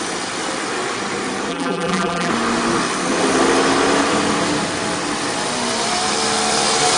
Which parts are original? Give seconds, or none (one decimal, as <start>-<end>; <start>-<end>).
0.0-1.5; 2.3-7.0